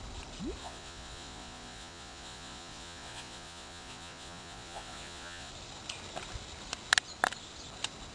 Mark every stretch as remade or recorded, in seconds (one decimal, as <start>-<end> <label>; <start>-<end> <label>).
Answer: 0.0-0.6 recorded; 0.6-5.5 remade; 5.5-8.1 recorded